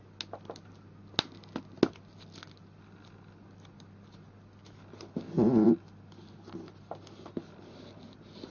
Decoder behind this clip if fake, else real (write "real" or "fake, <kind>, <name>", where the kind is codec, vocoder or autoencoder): real